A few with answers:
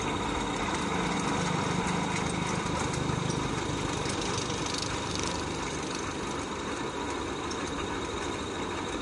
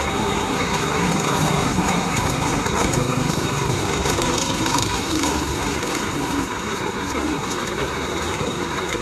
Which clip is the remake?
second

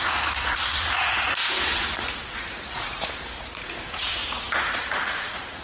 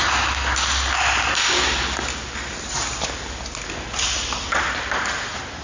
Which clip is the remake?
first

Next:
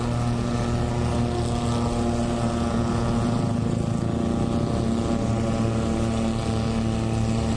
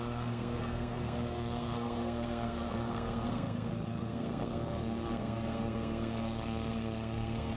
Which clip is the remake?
second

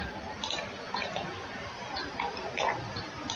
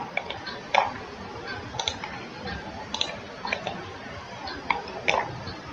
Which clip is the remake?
second